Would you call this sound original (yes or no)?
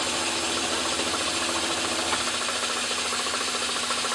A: yes